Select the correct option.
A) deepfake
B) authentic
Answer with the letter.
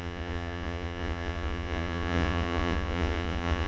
A